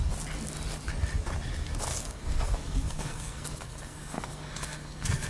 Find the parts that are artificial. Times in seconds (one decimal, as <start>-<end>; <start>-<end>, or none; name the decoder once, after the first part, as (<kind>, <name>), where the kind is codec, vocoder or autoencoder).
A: 1.9-5.3 (codec, SNAC)